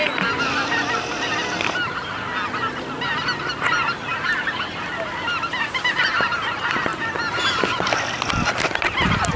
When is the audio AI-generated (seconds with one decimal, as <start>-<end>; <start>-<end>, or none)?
none